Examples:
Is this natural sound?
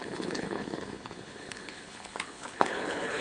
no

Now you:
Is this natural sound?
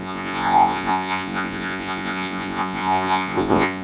no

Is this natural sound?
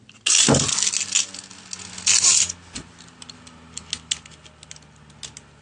yes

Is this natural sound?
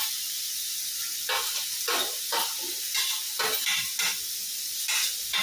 yes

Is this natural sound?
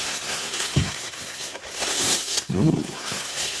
no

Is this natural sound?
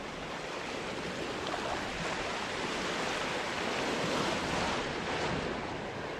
yes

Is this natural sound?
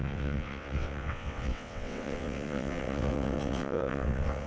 no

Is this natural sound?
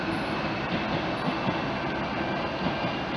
yes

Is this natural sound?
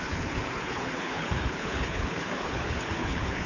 no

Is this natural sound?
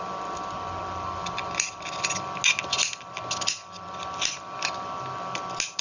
yes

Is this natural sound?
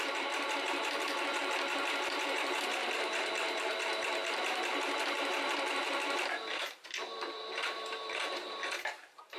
no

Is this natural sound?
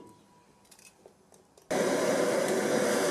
yes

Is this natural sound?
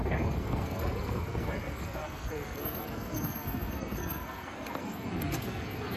no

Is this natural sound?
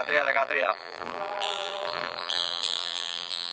no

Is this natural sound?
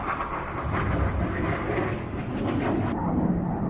yes